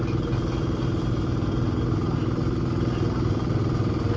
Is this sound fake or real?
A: real